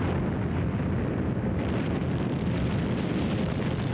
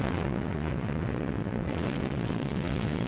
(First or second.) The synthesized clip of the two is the second